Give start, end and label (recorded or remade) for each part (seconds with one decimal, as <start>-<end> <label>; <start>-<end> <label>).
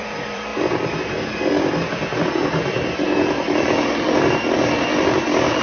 0.0-5.6 remade